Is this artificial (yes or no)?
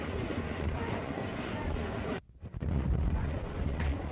yes